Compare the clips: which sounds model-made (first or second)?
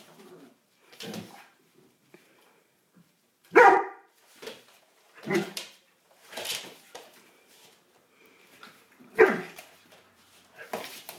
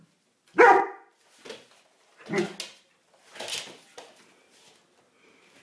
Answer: first